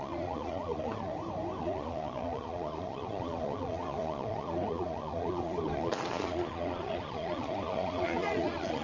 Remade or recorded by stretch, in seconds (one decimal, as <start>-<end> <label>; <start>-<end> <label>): 0.0-1.1 remade; 1.1-1.6 recorded; 1.6-8.8 remade